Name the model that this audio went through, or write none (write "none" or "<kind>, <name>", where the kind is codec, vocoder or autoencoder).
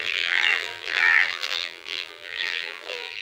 vocoder, BigVGAN v2